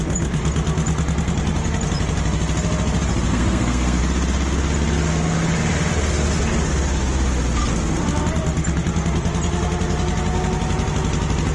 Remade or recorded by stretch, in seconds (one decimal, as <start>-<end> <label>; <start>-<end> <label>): 0.0-3.3 recorded; 3.3-4.0 remade; 4.0-11.5 recorded